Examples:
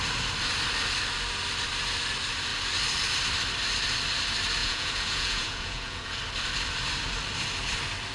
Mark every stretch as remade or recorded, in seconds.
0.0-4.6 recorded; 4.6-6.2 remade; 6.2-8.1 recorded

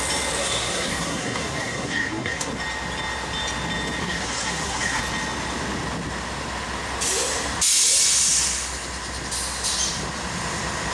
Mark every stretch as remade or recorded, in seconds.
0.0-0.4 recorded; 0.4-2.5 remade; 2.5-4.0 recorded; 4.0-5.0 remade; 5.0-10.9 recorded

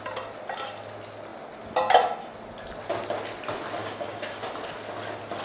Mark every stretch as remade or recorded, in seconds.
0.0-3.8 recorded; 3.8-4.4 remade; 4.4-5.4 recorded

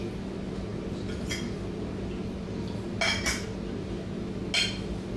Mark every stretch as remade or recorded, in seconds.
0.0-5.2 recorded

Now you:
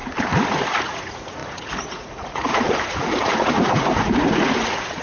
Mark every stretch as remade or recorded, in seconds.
0.0-0.5 recorded; 0.5-5.0 remade